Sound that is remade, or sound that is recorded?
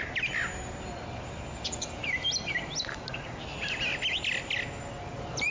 recorded